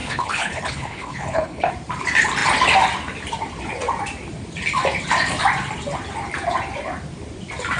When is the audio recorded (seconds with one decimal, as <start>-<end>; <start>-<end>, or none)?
1.7-7.8